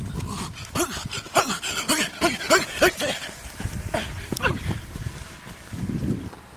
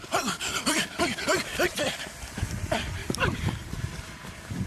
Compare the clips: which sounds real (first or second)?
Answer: first